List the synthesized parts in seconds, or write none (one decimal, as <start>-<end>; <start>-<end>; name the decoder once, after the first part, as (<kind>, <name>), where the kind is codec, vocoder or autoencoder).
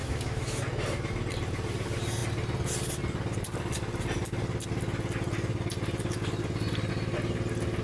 0.0-0.6 (autoencoder, DAC-VAE)